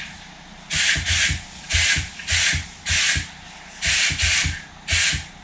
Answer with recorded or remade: recorded